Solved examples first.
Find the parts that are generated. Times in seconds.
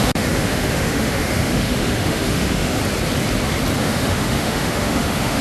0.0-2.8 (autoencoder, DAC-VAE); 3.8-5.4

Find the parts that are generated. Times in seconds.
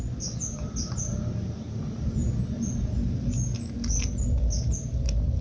none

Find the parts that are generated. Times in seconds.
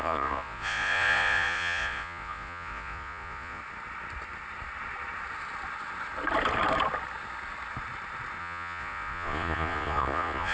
0.0-3.6 (vocoder, Vocos); 8.4-10.5